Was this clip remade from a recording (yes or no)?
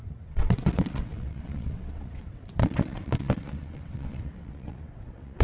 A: yes